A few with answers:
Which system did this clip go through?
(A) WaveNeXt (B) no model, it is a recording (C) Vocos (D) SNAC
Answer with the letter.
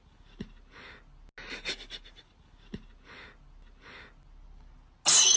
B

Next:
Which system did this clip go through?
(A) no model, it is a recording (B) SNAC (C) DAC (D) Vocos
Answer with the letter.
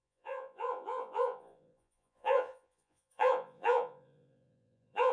D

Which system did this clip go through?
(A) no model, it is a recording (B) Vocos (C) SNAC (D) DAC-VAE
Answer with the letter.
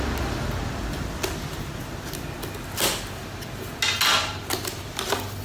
A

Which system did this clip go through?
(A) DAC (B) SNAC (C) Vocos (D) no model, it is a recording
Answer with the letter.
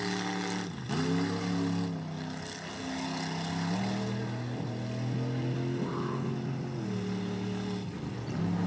D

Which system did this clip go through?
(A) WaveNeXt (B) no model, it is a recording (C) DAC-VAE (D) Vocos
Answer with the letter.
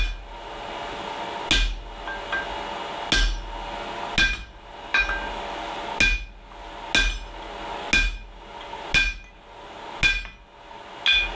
B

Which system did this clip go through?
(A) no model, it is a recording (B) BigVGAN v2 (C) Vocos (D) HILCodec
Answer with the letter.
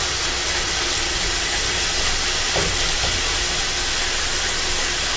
A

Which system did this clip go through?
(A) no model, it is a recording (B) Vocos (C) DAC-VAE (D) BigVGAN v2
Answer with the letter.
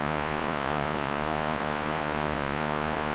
B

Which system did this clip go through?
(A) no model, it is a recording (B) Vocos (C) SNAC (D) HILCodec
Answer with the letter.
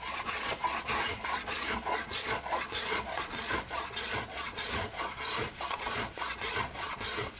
B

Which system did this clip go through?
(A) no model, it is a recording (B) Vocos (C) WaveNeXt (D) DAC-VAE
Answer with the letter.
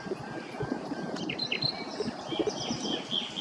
A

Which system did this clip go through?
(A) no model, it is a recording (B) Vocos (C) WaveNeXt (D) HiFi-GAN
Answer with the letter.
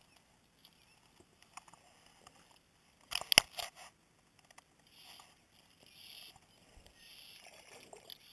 A